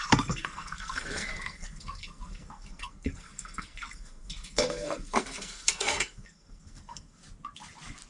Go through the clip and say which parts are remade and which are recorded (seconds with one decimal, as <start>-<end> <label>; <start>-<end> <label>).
0.0-7.2 remade; 7.2-8.1 recorded